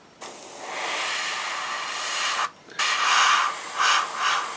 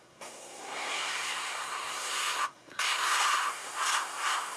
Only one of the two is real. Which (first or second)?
first